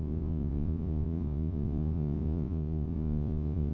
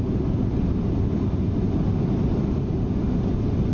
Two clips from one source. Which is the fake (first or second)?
first